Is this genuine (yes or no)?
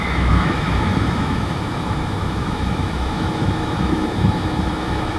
no